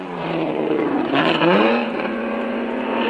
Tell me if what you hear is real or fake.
fake